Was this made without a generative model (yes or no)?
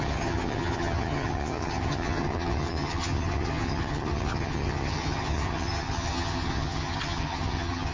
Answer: no